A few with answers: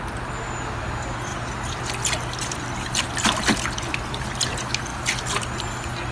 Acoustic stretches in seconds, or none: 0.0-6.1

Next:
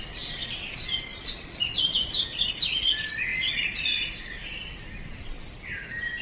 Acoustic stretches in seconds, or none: 0.0-1.1; 2.5-6.2

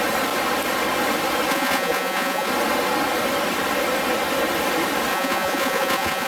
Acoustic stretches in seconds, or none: 0.0-1.5; 2.5-5.1

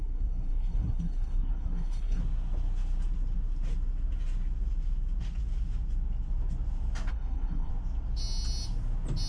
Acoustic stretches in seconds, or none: 2.2-7.1; 7.7-9.3